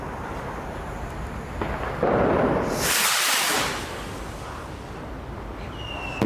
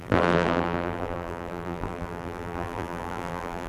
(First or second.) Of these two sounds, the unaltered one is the first